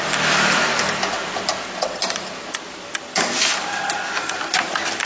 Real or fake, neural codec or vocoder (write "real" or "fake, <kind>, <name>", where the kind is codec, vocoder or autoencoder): real